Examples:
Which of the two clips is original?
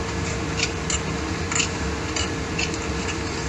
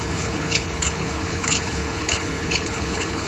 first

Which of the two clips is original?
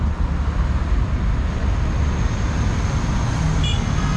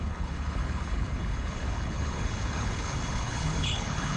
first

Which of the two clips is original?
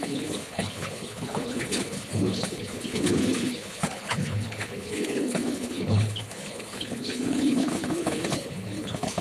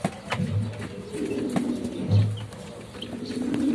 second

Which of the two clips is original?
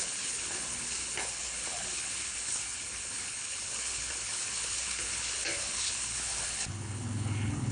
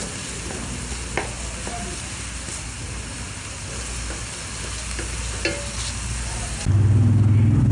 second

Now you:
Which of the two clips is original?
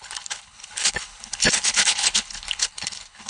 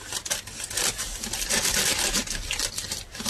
second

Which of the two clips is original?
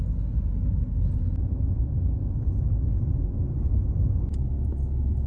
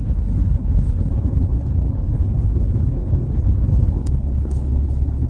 first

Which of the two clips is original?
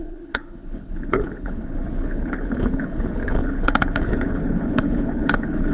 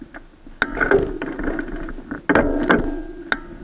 second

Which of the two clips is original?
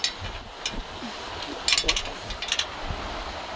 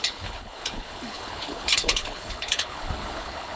first